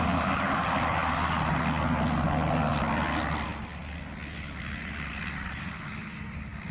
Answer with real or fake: real